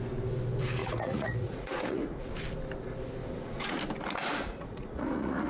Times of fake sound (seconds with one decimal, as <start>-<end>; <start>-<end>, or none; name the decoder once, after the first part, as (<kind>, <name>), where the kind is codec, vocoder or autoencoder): 0.8-2.3 (vocoder, Vocos); 3.2-3.8; 4.3-5.5